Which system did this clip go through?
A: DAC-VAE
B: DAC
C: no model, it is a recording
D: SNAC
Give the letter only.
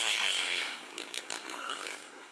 D